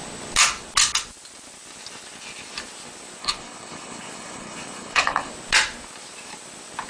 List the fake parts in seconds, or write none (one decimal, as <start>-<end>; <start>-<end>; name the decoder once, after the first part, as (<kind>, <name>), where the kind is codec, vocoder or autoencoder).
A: 3.2-5.3 (codec, HILCodec)